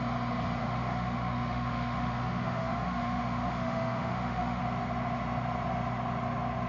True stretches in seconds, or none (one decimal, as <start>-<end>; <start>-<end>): 0.0-0.6; 4.6-6.7